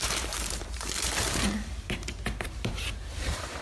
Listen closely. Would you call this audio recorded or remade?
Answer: remade